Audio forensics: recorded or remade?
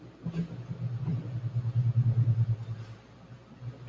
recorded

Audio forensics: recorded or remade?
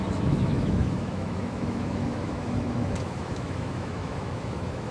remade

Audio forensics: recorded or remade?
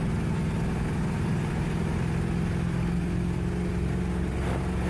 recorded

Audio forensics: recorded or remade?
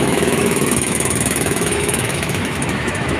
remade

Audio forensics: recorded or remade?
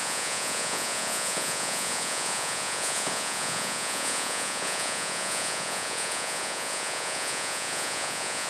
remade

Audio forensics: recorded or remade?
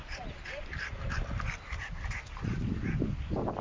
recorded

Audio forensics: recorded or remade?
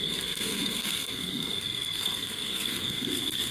remade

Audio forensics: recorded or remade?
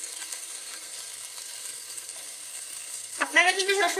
remade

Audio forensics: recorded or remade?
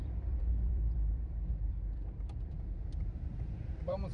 remade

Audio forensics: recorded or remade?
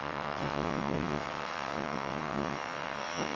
remade